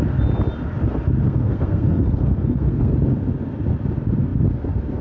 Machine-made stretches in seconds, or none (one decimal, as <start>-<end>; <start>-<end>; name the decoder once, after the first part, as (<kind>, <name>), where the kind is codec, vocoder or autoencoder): 1.3-2.9 (codec, SNAC)